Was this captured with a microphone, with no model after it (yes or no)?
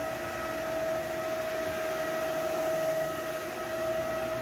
yes